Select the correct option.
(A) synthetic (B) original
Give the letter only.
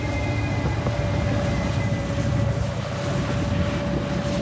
B